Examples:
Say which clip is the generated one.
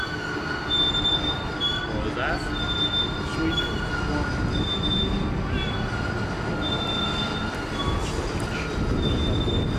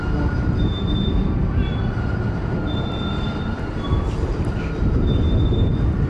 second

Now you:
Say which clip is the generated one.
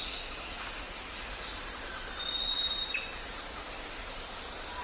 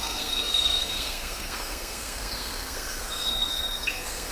second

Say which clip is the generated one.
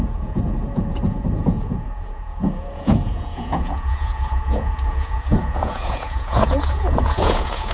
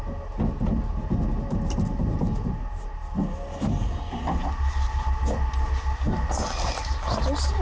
first